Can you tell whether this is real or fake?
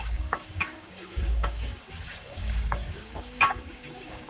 fake